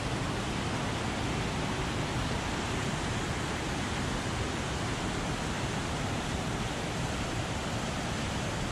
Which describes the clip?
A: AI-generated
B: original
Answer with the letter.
B